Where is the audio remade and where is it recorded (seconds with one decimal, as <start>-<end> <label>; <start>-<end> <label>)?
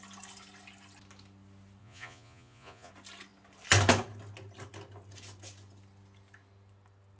0.0-1.8 recorded; 1.8-2.9 remade; 2.9-7.2 recorded